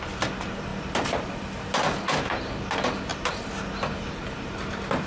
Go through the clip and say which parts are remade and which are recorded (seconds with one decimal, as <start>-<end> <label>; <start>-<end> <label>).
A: 0.0-5.1 recorded